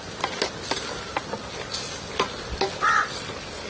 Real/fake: real